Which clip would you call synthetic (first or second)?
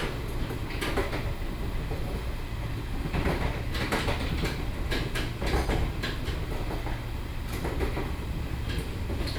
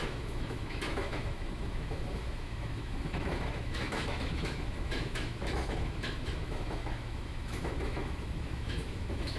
second